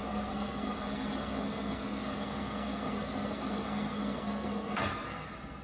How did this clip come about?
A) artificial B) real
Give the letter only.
A